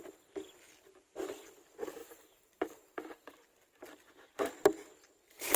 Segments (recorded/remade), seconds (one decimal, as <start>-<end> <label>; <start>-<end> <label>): 0.0-2.0 recorded; 2.0-3.3 remade; 3.3-5.6 recorded